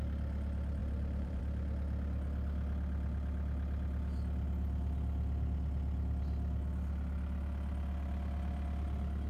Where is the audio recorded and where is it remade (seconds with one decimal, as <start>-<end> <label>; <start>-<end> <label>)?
0.0-0.8 recorded; 0.8-1.4 remade; 1.4-9.3 recorded